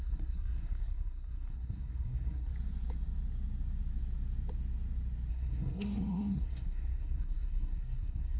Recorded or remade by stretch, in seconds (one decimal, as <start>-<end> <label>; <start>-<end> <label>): 0.0-2.5 remade; 2.5-5.3 recorded; 5.3-8.4 remade